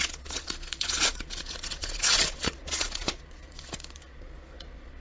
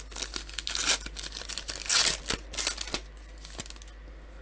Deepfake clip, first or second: first